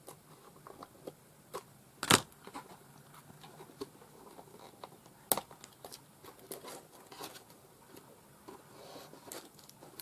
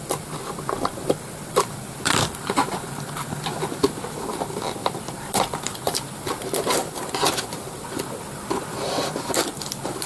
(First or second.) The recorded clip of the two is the first